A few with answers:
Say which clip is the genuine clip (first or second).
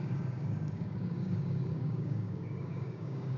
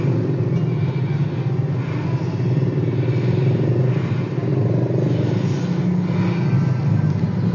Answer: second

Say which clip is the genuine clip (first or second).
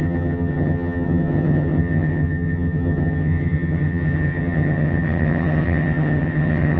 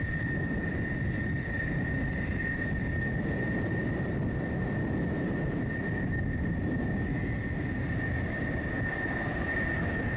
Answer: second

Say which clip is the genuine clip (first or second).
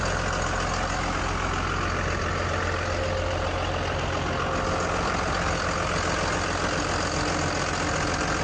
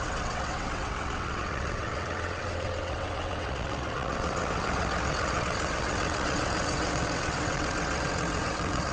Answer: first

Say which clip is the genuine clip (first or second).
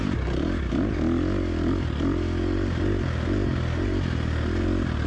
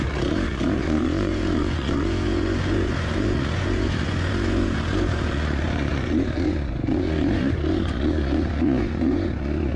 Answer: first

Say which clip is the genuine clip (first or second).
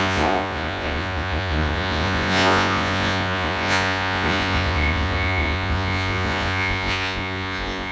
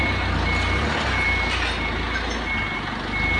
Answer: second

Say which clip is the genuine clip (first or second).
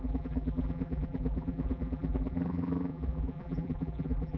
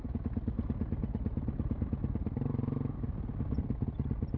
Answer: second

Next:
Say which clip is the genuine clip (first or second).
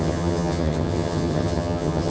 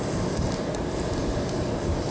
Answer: second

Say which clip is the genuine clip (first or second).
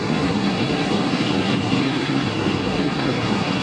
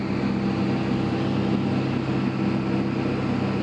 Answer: second